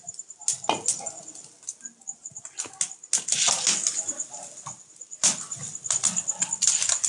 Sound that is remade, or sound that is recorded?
recorded